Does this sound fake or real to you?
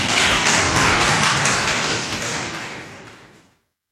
fake